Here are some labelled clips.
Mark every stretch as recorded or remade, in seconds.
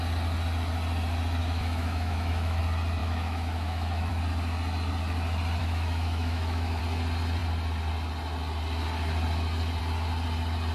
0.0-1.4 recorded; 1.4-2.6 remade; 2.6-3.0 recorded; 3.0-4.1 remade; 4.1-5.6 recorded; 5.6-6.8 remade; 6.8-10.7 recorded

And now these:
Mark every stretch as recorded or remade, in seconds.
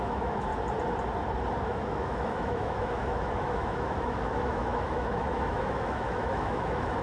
0.0-0.5 remade; 0.5-1.6 recorded; 1.6-7.0 remade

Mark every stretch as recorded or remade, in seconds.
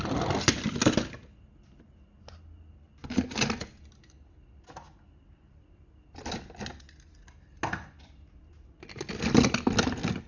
0.0-10.3 recorded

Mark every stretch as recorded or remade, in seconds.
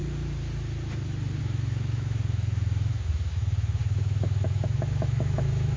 0.0-1.4 recorded; 1.4-5.8 remade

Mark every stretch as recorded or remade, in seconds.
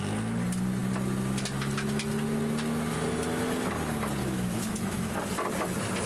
0.0-4.2 recorded; 4.2-5.1 remade; 5.1-6.1 recorded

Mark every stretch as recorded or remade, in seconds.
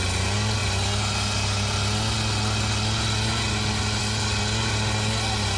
0.0-5.6 recorded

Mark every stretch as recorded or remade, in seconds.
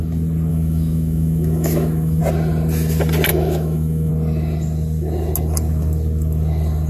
0.0-0.5 recorded; 0.5-2.2 remade; 2.2-3.3 recorded; 3.3-4.1 remade; 4.1-6.9 recorded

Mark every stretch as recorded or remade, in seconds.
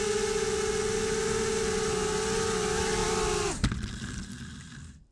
0.0-5.1 recorded